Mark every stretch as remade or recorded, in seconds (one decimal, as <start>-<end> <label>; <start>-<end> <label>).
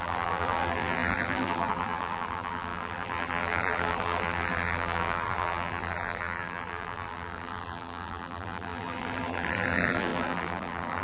0.0-11.0 remade